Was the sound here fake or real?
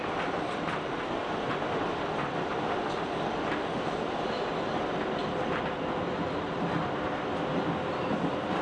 real